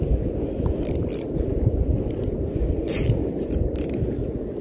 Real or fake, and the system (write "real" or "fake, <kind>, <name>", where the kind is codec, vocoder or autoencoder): real